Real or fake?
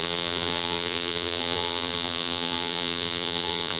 fake